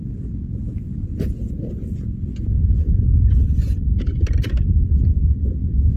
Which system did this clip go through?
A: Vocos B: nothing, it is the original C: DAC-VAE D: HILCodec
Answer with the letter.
B